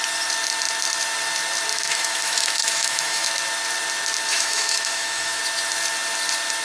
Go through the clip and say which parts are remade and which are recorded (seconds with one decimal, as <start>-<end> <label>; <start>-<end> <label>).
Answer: 0.0-1.7 recorded; 1.7-3.3 remade; 3.3-4.3 recorded; 4.3-5.4 remade; 5.4-6.6 recorded